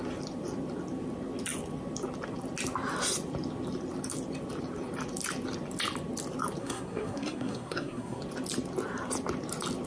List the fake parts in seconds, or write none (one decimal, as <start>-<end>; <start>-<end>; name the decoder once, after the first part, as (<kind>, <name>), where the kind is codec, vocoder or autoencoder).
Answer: 6.6-8.2 (codec, SNAC)